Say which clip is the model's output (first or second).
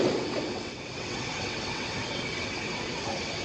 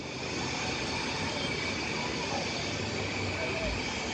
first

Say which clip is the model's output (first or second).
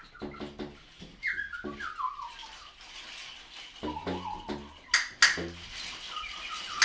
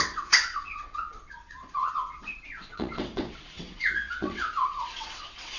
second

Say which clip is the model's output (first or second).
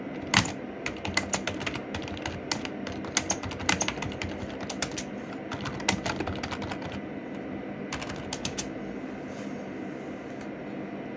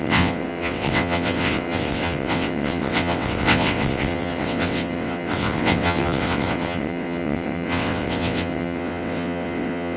second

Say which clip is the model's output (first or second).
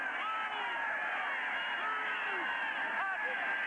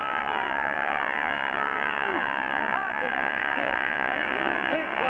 second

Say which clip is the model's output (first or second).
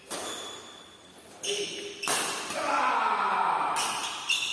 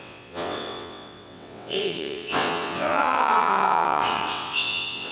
second